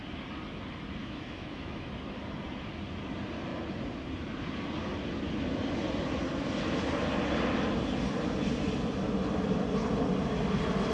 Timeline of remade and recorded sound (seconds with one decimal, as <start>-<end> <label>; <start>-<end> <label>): 0.0-1.0 recorded; 1.0-1.9 remade; 1.9-10.9 recorded